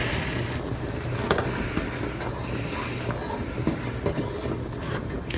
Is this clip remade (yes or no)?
no